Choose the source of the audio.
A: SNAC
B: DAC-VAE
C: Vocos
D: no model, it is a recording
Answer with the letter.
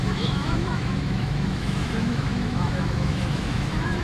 B